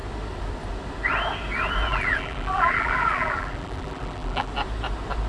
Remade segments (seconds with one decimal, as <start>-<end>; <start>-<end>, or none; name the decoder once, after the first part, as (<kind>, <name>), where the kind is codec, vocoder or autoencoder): 1.9-4.5 (vocoder, BigVGAN v2)